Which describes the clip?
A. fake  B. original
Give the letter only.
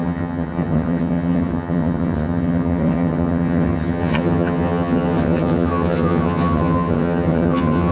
A